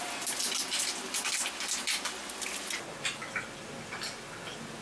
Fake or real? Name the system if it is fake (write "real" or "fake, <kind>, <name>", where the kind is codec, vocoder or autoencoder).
real